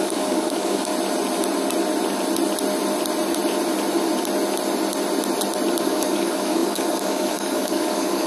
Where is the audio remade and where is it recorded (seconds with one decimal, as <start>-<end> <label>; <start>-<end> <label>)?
0.0-0.9 remade; 0.9-5.8 recorded; 5.8-8.3 remade